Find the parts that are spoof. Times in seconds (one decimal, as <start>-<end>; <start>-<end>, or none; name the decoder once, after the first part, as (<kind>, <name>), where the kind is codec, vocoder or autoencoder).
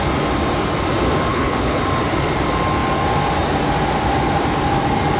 1.3-1.8 (codec, HILCodec)